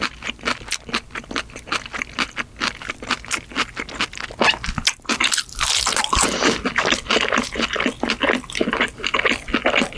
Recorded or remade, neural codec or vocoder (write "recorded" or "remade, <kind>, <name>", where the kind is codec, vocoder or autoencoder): recorded